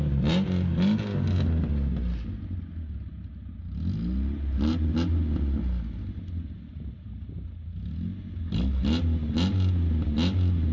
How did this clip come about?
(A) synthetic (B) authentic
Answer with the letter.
B